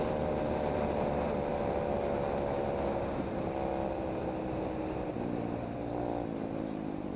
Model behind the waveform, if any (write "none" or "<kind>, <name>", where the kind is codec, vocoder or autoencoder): none